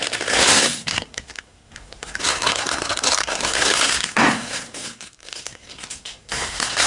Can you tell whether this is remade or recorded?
remade